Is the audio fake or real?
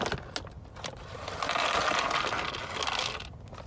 real